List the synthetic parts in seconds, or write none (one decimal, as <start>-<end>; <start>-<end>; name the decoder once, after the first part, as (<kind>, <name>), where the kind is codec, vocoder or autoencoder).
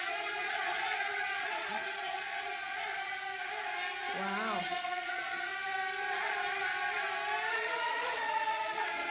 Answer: 0.0-2.9 (vocoder, Vocos); 4.6-5.5; 7.5-9.1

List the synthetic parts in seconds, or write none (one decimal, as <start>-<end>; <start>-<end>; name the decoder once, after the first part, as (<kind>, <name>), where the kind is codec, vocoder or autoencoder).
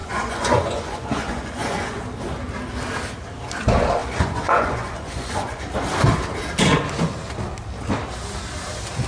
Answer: 0.0-2.0 (vocoder, Vocos); 4.0-5.6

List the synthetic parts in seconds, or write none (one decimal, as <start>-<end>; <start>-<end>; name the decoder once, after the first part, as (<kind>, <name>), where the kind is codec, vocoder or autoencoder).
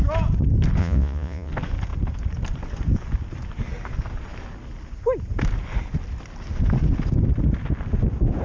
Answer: 0.8-1.5 (vocoder, Vocos)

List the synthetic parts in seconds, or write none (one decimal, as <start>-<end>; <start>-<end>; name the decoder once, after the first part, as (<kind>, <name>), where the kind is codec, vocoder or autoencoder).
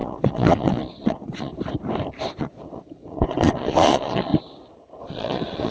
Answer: 0.0-1.5 (vocoder, Vocos); 2.4-4.3; 5.1-5.7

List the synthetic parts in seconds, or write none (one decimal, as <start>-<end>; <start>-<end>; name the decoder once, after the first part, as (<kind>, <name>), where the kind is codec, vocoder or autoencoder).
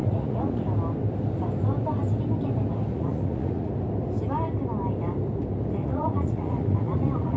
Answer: 0.0-0.6 (vocoder, Vocos); 2.9-3.7; 5.8-7.4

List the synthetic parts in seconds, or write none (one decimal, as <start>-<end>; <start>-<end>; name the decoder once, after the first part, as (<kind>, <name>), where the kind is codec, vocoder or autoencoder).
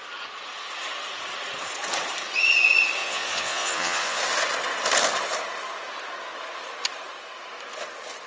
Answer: 3.0-4.2 (vocoder, Vocos)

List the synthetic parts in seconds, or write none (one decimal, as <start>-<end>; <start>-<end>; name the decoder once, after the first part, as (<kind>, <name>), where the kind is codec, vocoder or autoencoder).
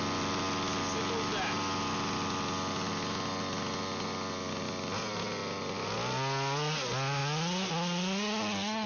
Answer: none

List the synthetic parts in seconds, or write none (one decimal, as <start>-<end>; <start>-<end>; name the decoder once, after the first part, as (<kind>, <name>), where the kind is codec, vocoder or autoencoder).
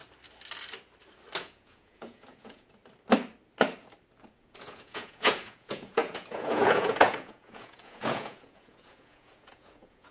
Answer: 1.4-2.8 (vocoder, Vocos); 4.2-10.1